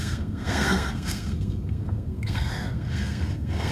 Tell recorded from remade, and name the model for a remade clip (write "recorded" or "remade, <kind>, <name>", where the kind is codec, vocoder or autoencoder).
remade, codec, SNAC